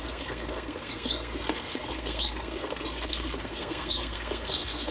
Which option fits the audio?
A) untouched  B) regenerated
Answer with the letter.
B